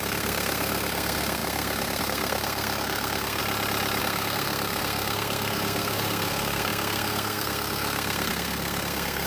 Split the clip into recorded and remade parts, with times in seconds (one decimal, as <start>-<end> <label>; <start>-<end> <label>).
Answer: 0.0-3.4 remade; 3.4-4.0 recorded; 4.0-9.3 remade